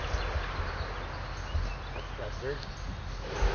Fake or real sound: real